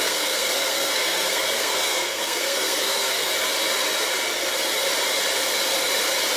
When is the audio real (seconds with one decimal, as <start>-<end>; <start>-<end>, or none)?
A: 3.3-6.4